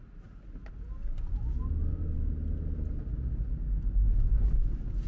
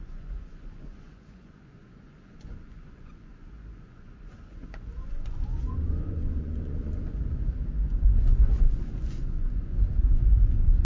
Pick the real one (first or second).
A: first